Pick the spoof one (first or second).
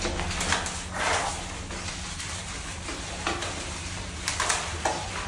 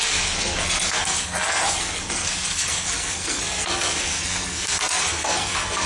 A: second